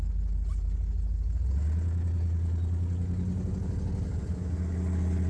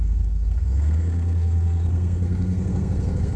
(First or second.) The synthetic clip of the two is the second